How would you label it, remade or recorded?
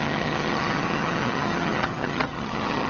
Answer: remade